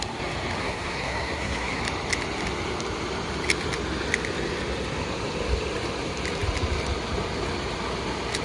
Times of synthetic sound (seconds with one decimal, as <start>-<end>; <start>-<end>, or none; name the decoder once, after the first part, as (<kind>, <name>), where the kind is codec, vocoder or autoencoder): 0.6-1.8 (codec, SNAC)